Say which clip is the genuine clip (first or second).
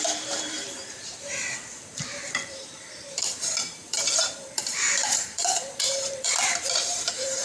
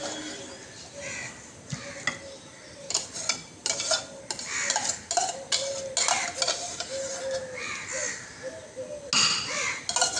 second